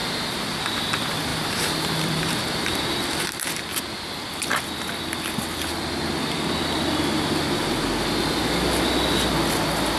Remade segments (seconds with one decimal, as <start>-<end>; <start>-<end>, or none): 0.0-0.6; 1.3-3.0